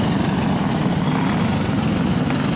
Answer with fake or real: real